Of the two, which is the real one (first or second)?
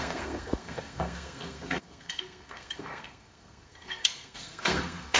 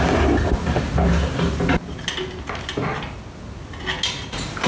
second